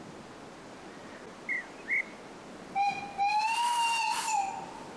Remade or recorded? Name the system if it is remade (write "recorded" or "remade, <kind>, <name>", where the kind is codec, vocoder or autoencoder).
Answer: recorded